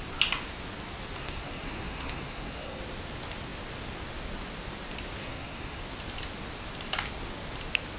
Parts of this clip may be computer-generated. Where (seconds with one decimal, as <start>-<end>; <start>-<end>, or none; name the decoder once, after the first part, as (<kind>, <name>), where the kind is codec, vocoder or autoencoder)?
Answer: 1.2-2.8 (codec, SNAC); 5.2-5.8